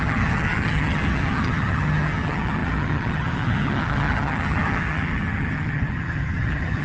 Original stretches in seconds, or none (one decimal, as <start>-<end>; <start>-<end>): none

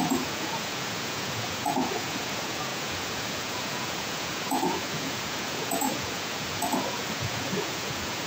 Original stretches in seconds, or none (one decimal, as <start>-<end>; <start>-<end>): none

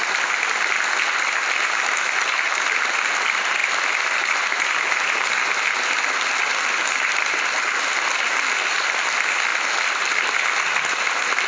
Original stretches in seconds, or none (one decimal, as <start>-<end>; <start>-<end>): none

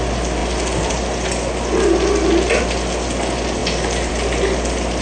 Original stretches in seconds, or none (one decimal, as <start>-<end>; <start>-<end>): 0.0-5.0

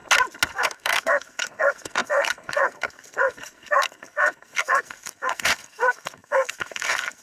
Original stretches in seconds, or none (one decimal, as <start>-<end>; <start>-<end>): 0.0-0.5